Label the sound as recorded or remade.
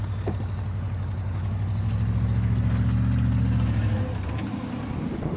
recorded